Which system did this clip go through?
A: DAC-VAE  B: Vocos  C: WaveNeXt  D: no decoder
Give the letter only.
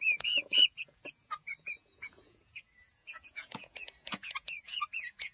B